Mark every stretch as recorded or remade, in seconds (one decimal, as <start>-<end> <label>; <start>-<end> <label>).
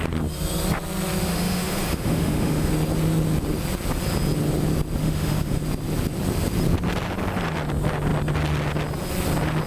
0.0-1.3 recorded; 1.3-2.7 remade; 2.7-5.0 recorded; 5.0-5.6 remade; 5.6-9.7 recorded